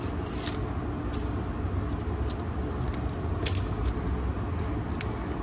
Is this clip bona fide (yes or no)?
yes